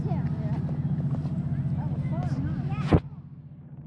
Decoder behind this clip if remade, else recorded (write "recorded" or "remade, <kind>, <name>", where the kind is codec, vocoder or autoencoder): recorded